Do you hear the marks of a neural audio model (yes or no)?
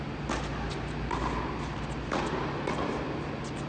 no